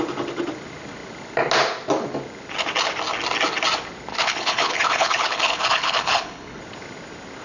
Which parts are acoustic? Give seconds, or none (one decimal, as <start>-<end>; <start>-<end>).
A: 0.0-4.1; 6.6-7.4